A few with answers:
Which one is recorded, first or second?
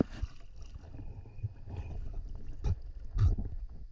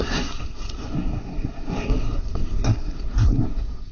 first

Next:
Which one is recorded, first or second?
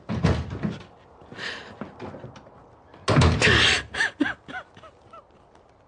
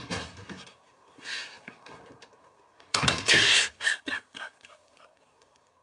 first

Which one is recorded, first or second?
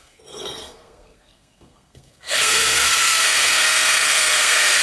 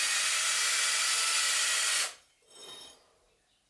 second